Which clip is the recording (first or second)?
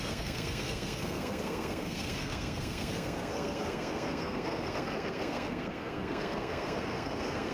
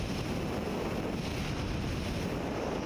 second